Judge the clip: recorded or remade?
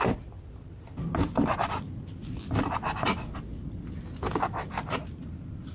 recorded